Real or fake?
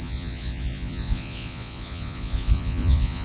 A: fake